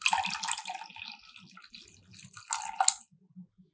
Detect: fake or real real